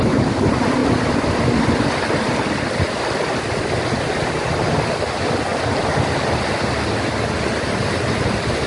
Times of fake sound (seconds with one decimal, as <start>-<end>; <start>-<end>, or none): none